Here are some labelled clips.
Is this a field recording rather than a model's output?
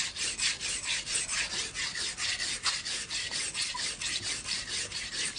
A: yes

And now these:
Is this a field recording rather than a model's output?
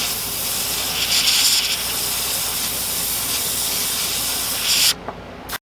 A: yes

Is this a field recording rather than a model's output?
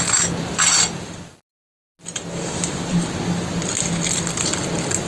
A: yes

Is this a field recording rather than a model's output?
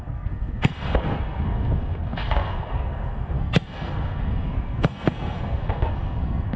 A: no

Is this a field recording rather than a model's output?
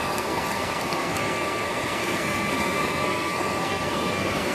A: no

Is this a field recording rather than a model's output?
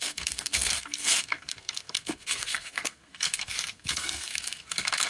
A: no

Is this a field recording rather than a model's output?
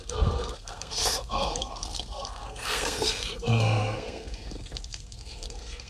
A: no